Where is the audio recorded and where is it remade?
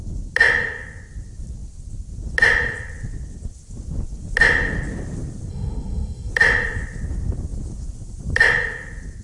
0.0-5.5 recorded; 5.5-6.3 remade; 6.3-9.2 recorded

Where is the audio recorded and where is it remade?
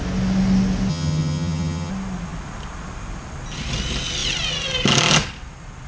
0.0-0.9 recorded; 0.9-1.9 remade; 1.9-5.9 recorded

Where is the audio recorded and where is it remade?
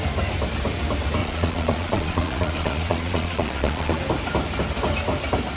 0.0-1.2 recorded; 1.2-4.0 remade; 4.0-5.6 recorded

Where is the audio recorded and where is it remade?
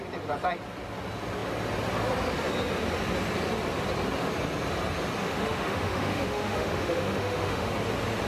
0.0-5.2 recorded; 5.2-7.7 remade; 7.7-8.3 recorded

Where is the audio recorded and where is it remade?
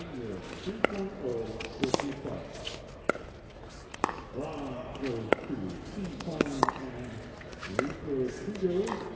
0.0-6.1 recorded; 6.1-6.7 remade; 6.7-9.2 recorded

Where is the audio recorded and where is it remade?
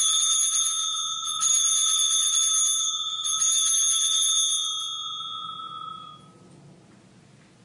0.0-7.6 recorded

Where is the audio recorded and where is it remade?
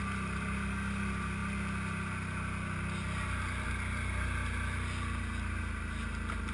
0.0-6.5 recorded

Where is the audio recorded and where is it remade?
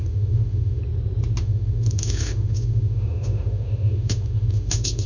0.0-0.8 remade; 0.8-1.4 recorded; 1.4-5.1 remade